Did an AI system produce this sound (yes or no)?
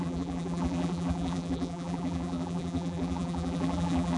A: yes